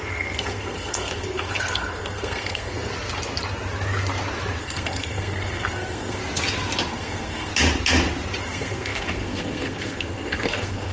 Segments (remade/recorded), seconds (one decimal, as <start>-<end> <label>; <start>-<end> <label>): 0.0-2.9 remade; 2.9-4.6 recorded; 4.6-6.2 remade; 6.2-6.9 recorded; 6.9-7.5 remade; 7.5-8.4 recorded; 8.4-10.9 remade